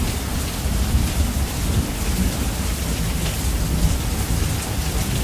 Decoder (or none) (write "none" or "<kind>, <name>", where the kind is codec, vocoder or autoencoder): none